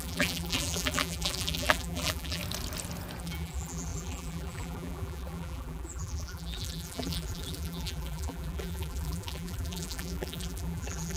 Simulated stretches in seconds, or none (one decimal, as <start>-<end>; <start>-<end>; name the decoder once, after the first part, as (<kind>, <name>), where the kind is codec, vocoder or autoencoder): 0.0-2.4 (vocoder, BigVGAN v2); 3.2-11.2